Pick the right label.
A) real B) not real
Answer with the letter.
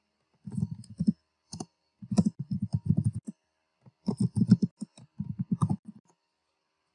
A